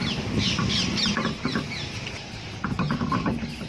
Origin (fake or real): real